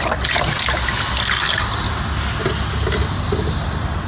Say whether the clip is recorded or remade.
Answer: recorded